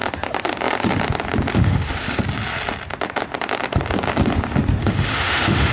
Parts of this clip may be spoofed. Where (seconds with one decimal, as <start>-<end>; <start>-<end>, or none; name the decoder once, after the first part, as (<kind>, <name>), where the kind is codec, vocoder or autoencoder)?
1.5-2.2 (autoencoder, DAC-VAE); 4.8-5.7